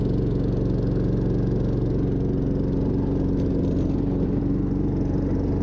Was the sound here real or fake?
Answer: real